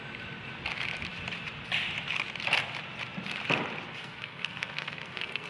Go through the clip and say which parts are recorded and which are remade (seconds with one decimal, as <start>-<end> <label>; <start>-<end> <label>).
0.0-4.0 recorded; 4.0-5.5 remade